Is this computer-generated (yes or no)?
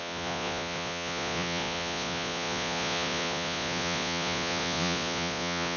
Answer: yes